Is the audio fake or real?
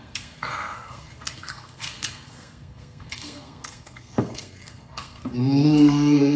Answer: fake